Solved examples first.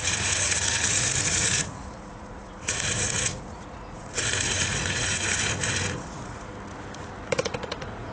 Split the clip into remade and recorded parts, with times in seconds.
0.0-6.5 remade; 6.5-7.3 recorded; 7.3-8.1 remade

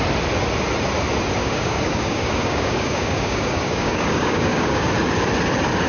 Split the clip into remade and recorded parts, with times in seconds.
0.0-1.4 recorded; 1.4-4.9 remade; 4.9-5.9 recorded

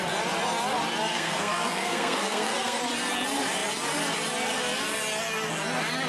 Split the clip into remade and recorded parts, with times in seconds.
0.0-1.1 recorded; 1.1-2.8 remade; 2.8-6.1 recorded

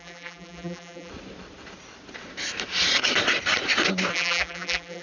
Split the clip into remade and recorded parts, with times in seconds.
0.0-1.1 remade; 1.1-4.1 recorded; 4.1-5.0 remade

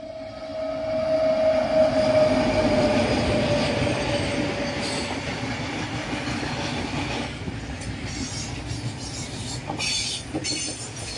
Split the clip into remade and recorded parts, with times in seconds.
0.0-11.2 recorded